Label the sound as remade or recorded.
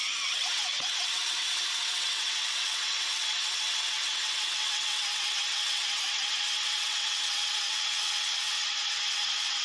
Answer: remade